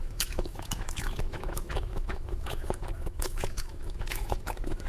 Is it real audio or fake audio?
fake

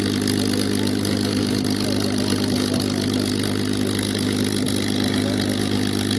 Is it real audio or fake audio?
real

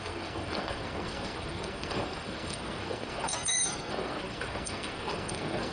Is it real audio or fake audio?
fake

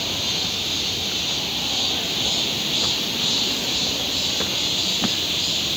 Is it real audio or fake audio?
real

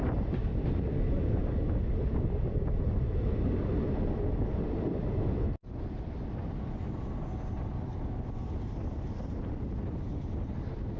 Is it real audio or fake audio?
real